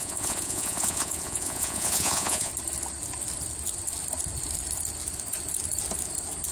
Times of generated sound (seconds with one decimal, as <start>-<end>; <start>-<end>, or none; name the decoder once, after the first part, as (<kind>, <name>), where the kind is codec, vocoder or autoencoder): 0.0-2.5 (vocoder, Vocos)